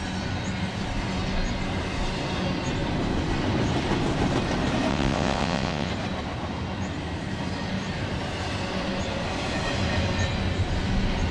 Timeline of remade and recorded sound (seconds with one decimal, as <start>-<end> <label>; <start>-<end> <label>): 0.0-4.9 recorded; 4.9-5.9 remade; 5.9-11.3 recorded